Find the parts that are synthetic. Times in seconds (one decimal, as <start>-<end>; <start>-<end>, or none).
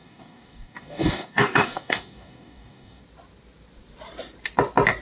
0.0-3.0